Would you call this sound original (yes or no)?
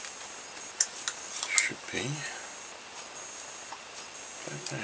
yes